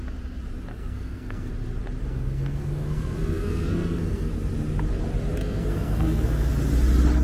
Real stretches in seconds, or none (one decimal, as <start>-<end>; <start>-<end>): 0.0-0.7; 1.5-2.0; 4.3-5.4; 6.5-7.2